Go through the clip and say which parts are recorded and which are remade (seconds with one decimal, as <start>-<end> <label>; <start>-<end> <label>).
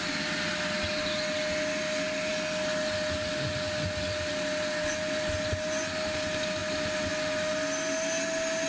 0.0-8.7 recorded